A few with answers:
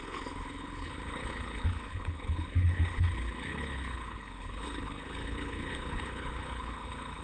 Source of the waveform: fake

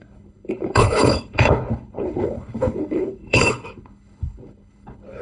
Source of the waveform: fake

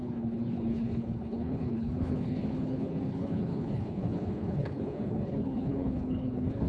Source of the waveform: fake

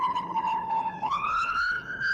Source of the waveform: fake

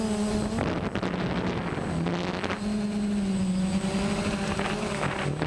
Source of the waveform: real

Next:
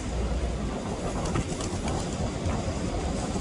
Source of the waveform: real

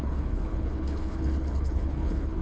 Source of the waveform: fake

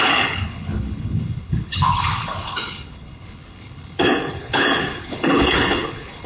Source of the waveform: fake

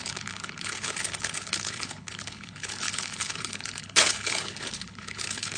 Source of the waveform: fake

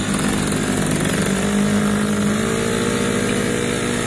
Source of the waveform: real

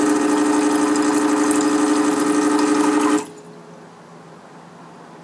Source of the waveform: real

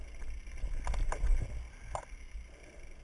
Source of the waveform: real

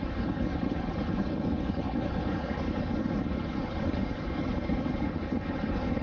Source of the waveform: fake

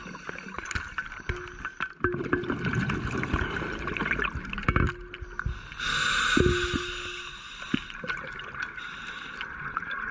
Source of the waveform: real